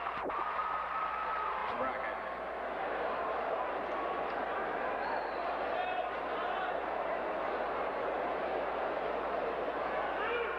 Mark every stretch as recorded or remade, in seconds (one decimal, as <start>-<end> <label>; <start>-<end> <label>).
0.0-1.6 remade; 1.6-2.8 recorded; 2.8-10.6 remade